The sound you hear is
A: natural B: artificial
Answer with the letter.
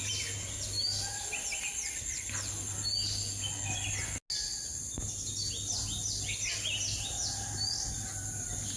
A